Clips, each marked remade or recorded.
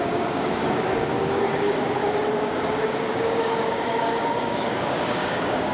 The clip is remade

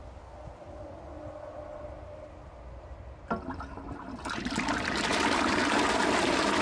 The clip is recorded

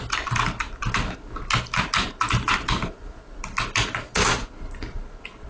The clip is recorded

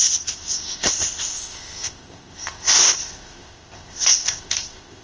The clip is remade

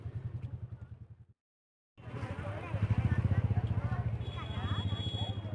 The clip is recorded